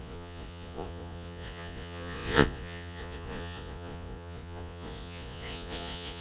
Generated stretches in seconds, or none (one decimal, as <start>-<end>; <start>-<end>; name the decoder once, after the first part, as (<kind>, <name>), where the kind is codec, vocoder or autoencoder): 0.0-6.2 (vocoder, Vocos)